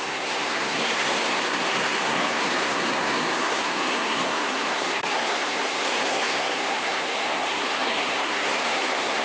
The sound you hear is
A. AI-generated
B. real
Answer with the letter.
A